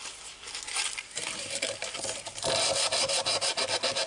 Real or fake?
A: real